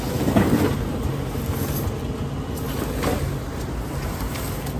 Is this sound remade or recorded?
recorded